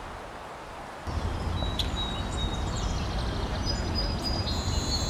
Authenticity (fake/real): real